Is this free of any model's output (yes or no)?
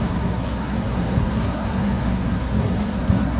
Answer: no